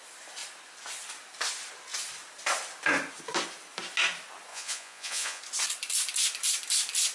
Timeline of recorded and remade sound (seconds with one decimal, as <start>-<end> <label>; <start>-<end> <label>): 0.0-4.5 recorded; 4.5-5.4 remade; 5.4-7.1 recorded